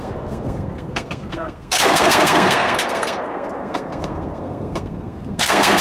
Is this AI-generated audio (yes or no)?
yes